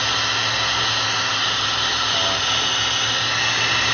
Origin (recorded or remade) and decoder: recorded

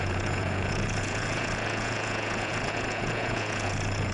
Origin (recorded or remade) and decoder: remade, vocoder, Vocos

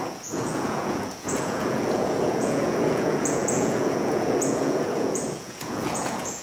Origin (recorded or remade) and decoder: remade, vocoder, Vocos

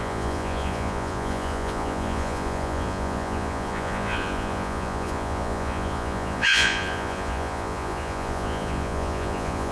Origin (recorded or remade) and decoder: remade, vocoder, Vocos